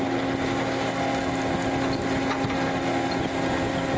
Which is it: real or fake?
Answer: real